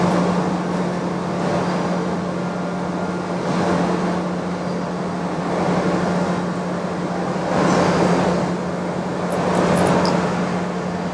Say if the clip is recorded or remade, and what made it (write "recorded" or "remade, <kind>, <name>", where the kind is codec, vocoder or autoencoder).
recorded